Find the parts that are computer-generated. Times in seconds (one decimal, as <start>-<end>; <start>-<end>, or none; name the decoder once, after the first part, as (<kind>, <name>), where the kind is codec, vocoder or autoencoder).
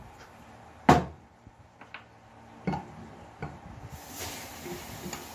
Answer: 0.0-0.5 (vocoder, BigVGAN v2); 1.0-1.8